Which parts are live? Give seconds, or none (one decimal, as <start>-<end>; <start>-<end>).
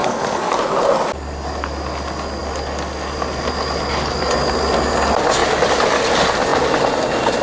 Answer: 0.5-7.4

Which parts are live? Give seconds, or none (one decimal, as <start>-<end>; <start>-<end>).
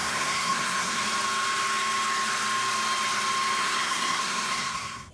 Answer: 1.0-3.6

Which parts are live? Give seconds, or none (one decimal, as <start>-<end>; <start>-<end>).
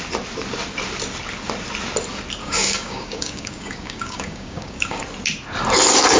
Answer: 0.0-2.4; 5.0-6.2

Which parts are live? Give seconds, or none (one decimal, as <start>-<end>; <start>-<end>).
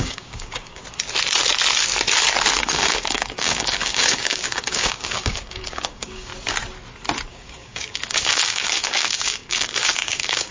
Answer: 0.8-2.6; 6.3-7.3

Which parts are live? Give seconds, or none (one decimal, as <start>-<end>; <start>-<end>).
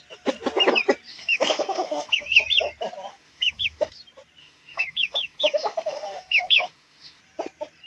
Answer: 0.0-1.1; 2.4-3.1; 3.9-4.4; 7.2-7.9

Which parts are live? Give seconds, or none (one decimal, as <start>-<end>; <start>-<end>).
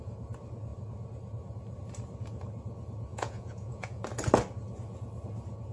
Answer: 0.0-3.1; 4.0-5.7